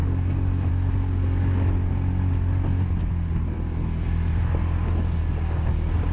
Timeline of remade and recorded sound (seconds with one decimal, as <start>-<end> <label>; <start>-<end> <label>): 0.0-6.1 recorded